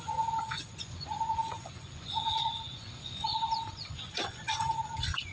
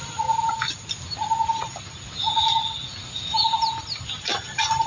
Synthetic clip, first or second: first